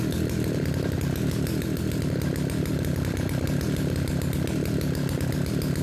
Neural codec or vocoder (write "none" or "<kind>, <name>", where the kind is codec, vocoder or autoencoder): none